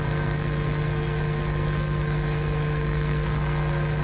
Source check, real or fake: fake